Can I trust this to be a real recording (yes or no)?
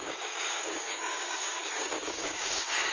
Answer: no